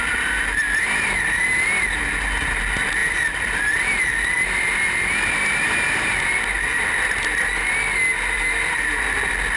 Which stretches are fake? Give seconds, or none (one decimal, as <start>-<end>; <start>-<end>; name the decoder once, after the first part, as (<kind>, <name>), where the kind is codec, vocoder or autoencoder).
none